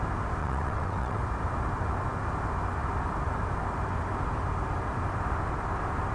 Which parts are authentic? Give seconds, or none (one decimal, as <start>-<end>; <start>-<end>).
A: 0.0-0.4; 1.2-6.1